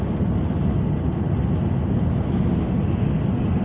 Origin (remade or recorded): recorded